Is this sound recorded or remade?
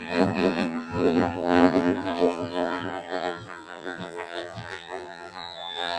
remade